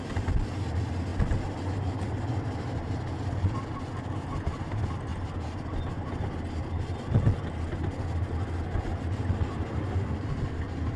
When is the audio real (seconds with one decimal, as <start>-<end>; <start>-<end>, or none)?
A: 0.0-11.0